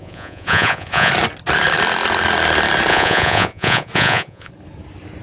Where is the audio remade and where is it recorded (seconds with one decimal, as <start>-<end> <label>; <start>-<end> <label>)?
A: 0.0-1.1 remade; 1.1-2.9 recorded; 2.9-4.5 remade; 4.5-5.2 recorded